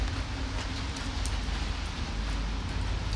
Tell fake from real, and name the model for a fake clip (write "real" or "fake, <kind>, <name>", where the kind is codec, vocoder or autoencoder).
real